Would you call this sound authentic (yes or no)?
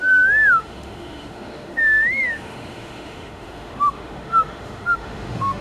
no